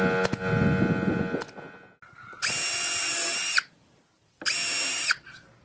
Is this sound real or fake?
real